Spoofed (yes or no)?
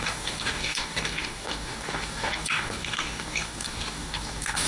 yes